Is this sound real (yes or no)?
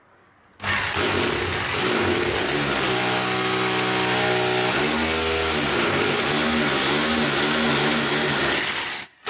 yes